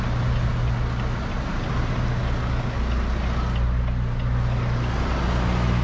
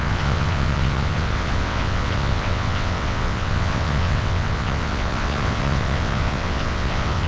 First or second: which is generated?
second